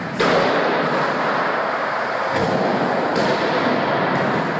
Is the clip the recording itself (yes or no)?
yes